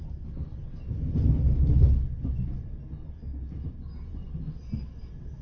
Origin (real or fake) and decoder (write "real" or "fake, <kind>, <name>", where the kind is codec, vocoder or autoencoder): real